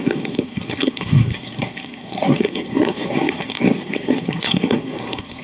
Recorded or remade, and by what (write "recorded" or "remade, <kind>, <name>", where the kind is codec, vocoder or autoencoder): remade, codec, SNAC